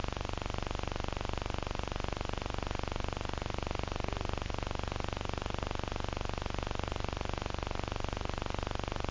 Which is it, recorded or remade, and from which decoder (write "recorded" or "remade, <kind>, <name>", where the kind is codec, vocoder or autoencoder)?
recorded